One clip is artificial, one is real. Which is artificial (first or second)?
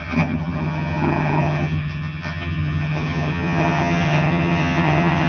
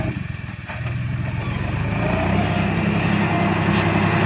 first